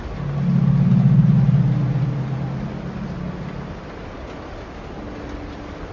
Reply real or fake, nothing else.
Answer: real